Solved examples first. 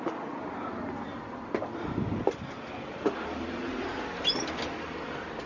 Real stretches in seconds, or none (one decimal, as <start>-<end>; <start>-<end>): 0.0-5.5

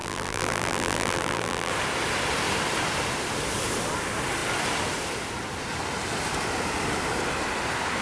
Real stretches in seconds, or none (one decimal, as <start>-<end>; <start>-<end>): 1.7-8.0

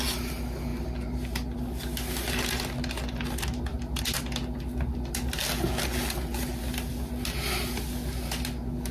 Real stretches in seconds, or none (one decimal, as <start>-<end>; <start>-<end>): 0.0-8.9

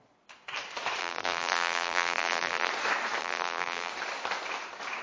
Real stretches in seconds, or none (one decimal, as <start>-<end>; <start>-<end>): 0.0-1.0; 2.7-3.2; 3.9-5.0